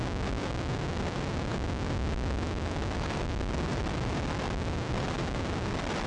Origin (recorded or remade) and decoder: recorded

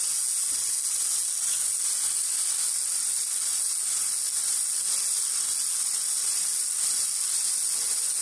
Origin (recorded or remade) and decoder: recorded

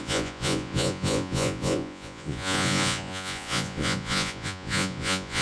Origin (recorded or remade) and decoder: remade, vocoder, Vocos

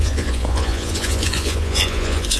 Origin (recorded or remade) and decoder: remade, vocoder, Vocos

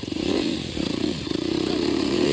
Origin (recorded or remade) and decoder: remade, vocoder, Vocos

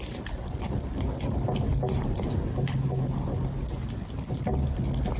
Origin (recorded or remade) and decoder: recorded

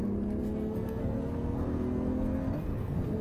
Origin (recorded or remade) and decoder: remade, codec, SNAC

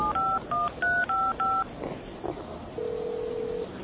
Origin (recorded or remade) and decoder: recorded